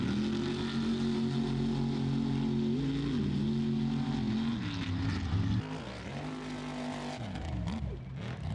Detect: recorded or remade recorded